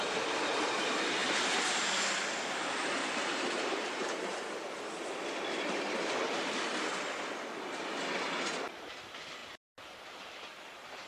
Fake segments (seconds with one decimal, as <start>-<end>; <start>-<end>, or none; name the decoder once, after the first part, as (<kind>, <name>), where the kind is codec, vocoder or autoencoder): 1.2-1.9 (vocoder, BigVGAN v2); 3.0-4.2